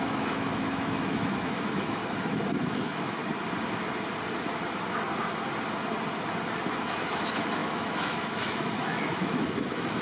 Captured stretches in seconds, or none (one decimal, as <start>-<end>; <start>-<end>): 2.0-2.7; 3.2-6.8